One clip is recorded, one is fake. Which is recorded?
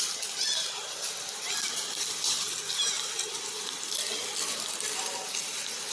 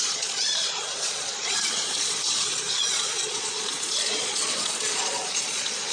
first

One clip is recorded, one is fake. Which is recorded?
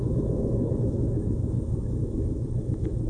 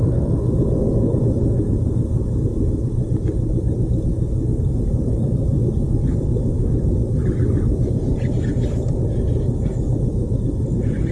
second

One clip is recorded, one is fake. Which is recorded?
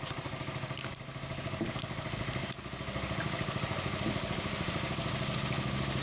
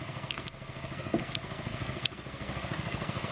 first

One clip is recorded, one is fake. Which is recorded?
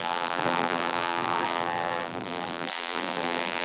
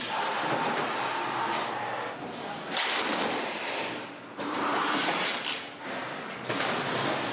second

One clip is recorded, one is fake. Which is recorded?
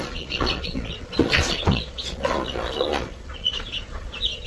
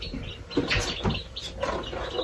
second